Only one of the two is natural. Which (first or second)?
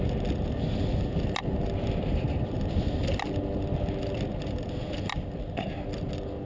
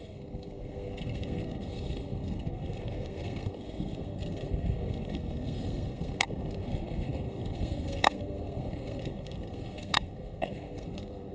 first